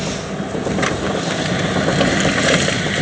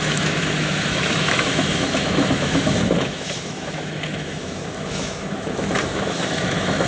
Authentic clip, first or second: first